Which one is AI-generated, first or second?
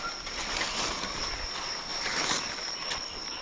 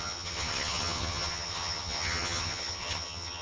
second